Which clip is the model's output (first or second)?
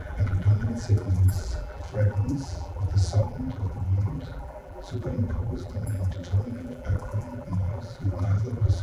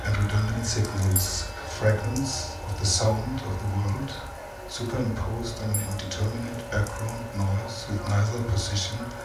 first